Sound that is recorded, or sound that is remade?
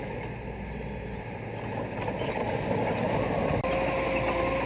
recorded